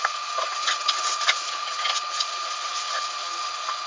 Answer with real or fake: fake